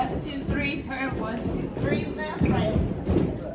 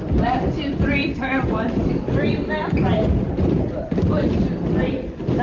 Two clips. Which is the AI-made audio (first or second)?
second